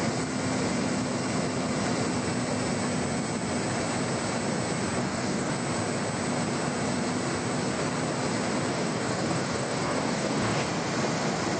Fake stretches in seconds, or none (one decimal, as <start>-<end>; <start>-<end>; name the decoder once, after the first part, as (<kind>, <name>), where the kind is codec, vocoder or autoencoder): 5.0-5.5 (codec, DAC); 8.7-10.7